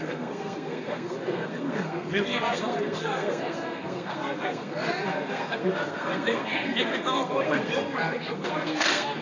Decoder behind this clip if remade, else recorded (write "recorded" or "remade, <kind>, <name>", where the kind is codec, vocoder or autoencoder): remade, codec, SNAC